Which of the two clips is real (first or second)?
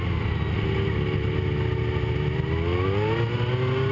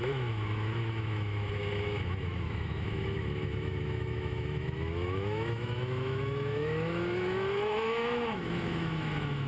first